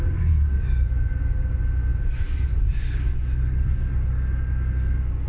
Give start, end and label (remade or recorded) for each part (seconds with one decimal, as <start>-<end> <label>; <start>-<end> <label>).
0.0-1.9 recorded; 1.9-2.8 remade; 2.8-5.3 recorded